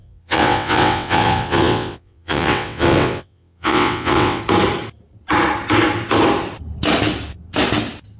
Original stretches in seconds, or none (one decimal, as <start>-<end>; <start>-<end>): 4.4-8.2